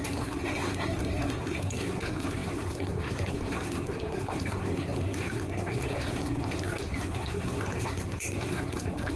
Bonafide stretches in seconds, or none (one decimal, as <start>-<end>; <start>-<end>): none